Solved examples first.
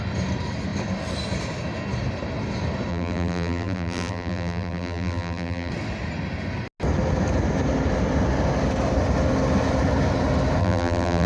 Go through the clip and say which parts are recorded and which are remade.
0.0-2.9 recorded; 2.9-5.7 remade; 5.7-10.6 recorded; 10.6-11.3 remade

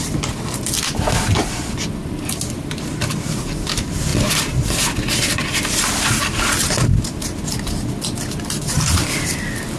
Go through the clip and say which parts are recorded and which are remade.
0.0-2.0 recorded; 2.0-3.1 remade; 3.1-9.8 recorded

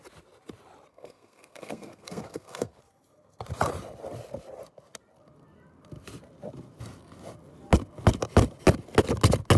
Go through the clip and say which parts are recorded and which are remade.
0.0-0.9 recorded; 0.9-2.8 remade; 2.8-9.6 recorded

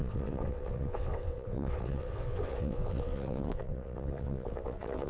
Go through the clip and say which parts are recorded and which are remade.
0.0-5.1 remade